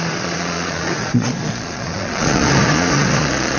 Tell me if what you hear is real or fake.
fake